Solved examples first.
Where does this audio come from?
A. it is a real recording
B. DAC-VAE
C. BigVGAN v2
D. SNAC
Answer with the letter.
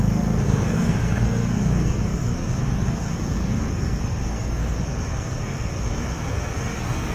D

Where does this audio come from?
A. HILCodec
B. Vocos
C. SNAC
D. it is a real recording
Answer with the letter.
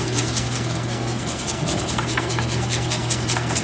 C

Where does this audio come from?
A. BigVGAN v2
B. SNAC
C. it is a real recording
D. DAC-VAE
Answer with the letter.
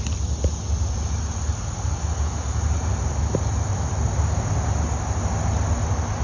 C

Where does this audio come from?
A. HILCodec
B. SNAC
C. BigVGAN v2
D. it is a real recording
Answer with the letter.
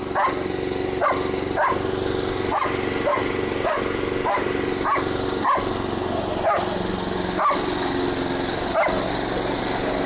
D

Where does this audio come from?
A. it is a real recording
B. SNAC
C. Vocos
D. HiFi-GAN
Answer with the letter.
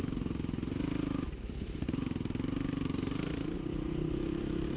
A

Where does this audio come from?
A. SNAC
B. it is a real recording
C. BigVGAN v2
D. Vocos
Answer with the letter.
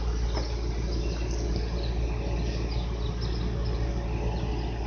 B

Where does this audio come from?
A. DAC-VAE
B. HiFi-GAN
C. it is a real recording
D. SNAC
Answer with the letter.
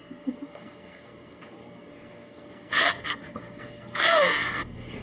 D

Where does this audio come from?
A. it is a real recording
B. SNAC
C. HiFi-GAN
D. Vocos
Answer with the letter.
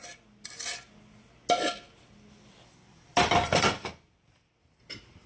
A